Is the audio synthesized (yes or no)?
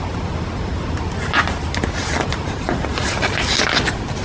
no